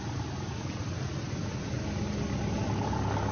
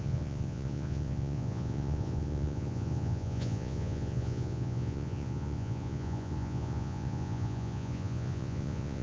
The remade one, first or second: second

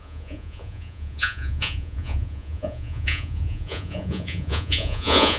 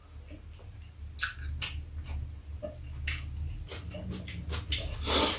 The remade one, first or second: first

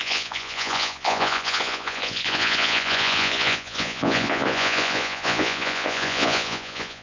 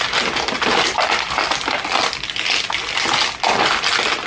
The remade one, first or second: first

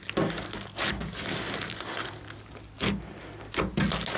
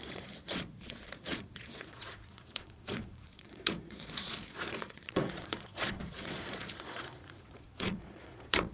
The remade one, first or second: second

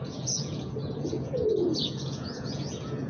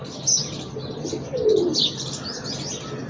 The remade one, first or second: first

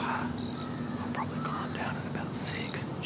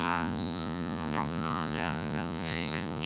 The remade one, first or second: second